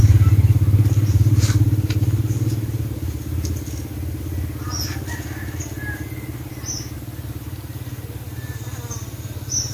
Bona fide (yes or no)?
yes